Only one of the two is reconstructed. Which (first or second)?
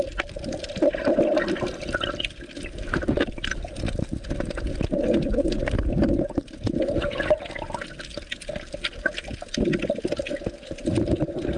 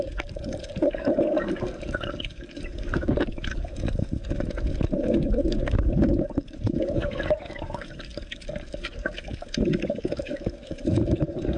second